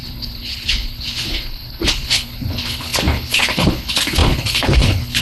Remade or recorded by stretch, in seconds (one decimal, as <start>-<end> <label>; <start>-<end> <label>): 0.0-5.2 remade